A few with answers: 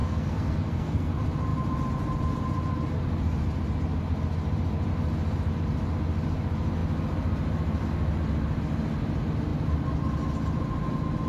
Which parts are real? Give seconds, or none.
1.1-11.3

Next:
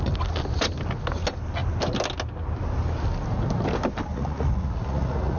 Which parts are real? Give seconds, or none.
0.0-4.1